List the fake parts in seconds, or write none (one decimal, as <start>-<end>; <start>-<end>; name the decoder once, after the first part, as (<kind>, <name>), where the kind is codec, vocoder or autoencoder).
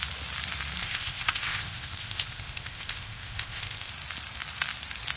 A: 0.8-3.9 (codec, ZipCodec)